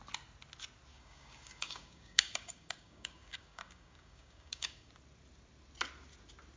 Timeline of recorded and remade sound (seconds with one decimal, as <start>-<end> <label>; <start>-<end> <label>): 0.0-0.9 recorded; 0.9-4.9 remade; 4.9-6.6 recorded